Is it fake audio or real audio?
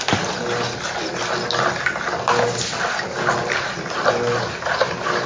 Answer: real